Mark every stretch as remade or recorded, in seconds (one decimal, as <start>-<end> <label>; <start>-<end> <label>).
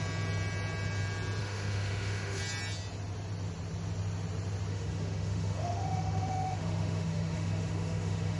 0.0-1.4 recorded; 1.4-2.4 remade; 2.4-4.7 recorded; 4.7-8.4 remade